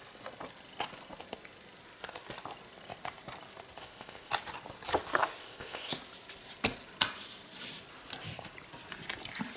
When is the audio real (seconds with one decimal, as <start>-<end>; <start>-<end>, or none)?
0.0-3.8; 4.3-5.4; 5.9-9.6